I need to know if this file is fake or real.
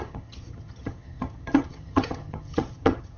fake